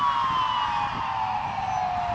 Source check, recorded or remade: recorded